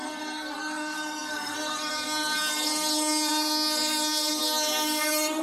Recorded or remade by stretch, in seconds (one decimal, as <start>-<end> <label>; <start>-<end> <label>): 0.0-5.4 remade